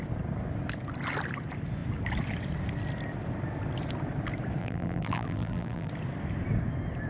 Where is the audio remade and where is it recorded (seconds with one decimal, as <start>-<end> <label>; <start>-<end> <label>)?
0.0-4.6 recorded; 4.6-5.9 remade; 5.9-7.1 recorded